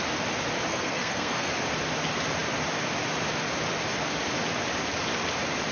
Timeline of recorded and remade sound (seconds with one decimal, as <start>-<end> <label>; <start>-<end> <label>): 0.0-0.7 recorded; 0.7-1.5 remade; 1.5-5.7 recorded